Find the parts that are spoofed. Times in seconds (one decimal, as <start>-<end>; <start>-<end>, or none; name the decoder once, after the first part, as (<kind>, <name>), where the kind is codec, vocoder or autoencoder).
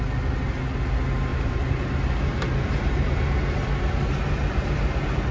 1.3-1.9 (vocoder, BigVGAN v2); 2.3-3.1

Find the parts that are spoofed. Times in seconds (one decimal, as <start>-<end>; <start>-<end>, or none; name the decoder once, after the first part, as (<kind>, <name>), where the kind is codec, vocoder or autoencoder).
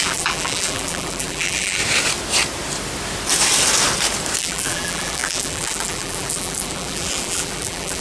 0.0-1.8 (vocoder, BigVGAN v2); 4.4-8.0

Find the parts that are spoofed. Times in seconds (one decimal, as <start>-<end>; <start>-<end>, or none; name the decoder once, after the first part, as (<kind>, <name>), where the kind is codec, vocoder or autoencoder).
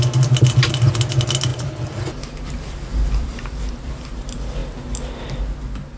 1.5-2.5 (vocoder, BigVGAN v2); 2.9-3.9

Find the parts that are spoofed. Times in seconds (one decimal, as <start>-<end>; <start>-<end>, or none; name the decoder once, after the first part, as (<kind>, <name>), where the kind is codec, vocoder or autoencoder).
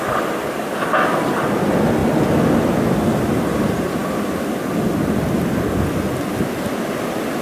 none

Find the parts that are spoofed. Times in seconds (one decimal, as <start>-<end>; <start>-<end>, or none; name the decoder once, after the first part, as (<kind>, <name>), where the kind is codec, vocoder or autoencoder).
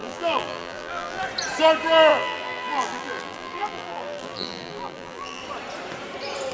0.0-1.2 (vocoder, BigVGAN v2); 2.1-5.4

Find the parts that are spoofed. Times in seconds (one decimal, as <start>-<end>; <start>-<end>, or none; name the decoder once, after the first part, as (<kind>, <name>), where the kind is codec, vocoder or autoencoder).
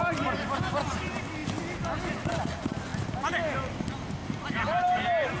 4.2-5.4 (vocoder, BigVGAN v2)